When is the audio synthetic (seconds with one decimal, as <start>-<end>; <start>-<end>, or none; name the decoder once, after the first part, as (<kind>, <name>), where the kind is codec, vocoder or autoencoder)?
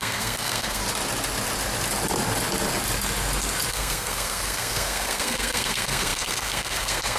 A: 0.0-0.8 (codec, SNAC); 3.7-7.2